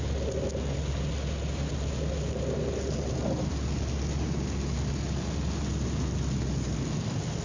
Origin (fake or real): real